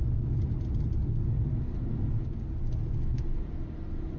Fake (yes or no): no